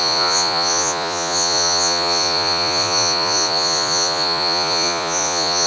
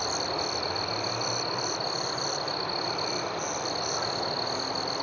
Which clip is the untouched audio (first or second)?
second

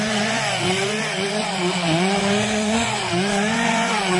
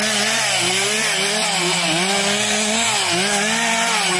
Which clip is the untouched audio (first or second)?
second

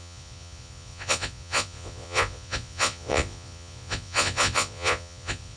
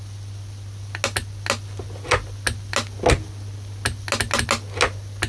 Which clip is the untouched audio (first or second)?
second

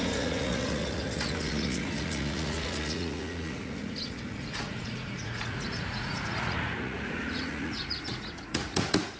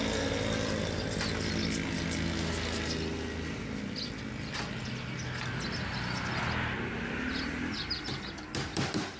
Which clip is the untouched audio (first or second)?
second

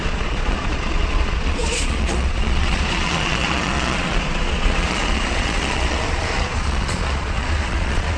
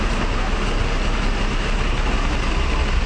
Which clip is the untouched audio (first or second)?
second